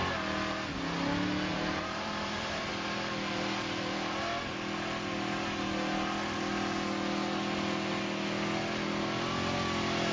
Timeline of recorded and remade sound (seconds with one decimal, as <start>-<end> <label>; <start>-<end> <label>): 0.0-1.5 recorded; 1.5-2.7 remade; 2.7-10.1 recorded